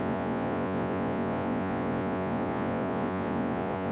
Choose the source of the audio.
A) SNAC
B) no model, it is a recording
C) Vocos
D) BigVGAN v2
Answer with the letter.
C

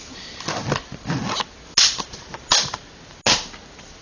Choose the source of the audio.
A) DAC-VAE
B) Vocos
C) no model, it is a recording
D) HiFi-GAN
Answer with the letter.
C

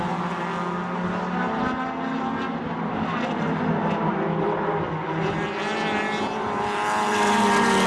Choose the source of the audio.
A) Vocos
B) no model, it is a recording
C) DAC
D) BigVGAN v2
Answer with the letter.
B